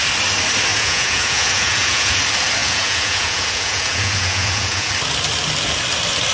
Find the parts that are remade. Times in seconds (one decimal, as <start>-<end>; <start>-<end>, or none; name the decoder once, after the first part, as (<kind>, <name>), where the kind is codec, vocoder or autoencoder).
0.7-2.2 (vocoder, Vocos); 2.6-4.9